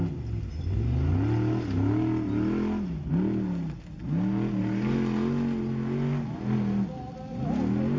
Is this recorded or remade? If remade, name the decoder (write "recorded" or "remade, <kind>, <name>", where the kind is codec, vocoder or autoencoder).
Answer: recorded